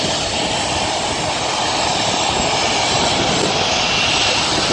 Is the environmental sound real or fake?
real